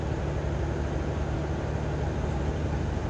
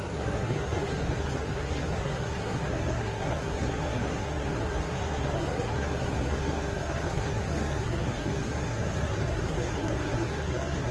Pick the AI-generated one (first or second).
second